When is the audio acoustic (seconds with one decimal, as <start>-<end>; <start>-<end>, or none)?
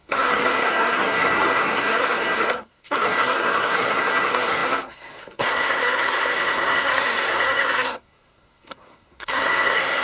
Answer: none